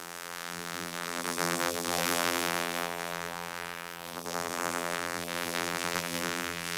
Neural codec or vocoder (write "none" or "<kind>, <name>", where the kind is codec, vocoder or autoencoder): vocoder, BigVGAN v2